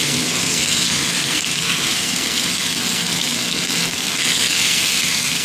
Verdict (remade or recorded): remade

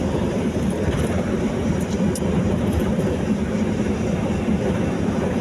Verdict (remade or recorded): remade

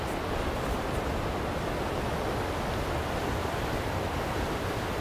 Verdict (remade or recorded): recorded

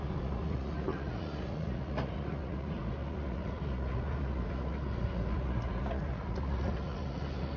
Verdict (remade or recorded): remade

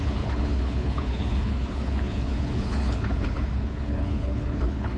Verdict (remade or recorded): remade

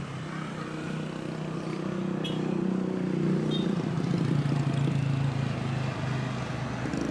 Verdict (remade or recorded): recorded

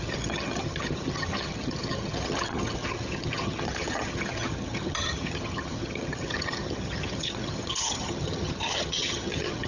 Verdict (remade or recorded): remade